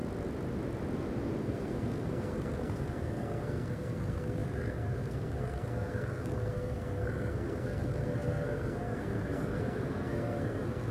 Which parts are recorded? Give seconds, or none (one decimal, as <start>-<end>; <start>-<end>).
0.0-1.4